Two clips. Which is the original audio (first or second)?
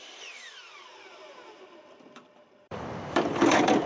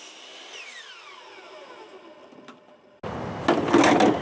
second